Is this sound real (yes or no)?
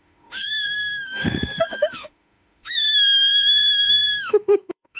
no